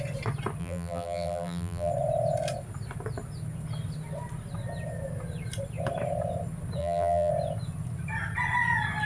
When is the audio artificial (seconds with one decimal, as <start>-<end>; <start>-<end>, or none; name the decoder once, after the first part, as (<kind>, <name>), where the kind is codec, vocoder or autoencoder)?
0.6-1.9 (vocoder, BigVGAN v2); 6.8-7.3